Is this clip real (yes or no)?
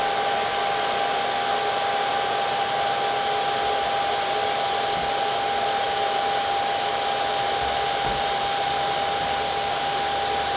yes